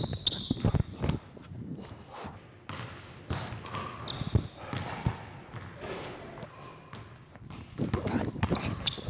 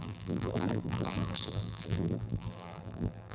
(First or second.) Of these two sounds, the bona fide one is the first